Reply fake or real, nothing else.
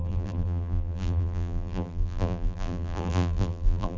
fake